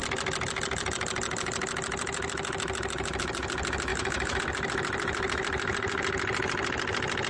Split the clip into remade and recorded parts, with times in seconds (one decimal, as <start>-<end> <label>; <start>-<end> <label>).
0.0-3.9 recorded; 3.9-4.4 remade; 4.4-7.3 recorded

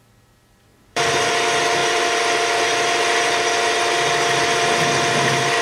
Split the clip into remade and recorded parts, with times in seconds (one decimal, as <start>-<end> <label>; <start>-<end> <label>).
0.0-0.7 recorded; 0.7-1.3 remade; 1.3-5.6 recorded

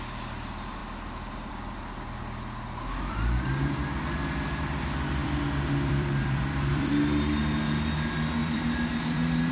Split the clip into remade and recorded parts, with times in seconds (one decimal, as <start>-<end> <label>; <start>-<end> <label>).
0.0-5.2 recorded; 5.2-6.9 remade; 6.9-8.4 recorded; 8.4-9.5 remade